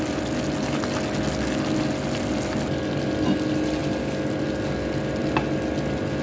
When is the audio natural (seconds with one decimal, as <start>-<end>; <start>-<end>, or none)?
0.0-6.2